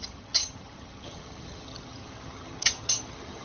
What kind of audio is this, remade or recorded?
remade